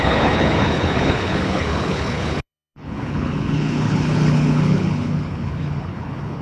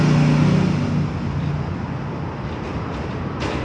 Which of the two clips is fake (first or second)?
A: first